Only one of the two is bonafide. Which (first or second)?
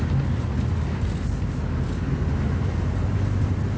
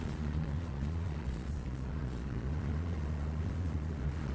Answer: first